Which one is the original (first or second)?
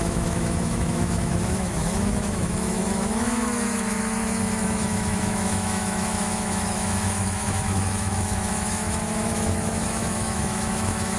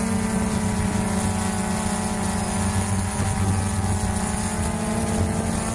second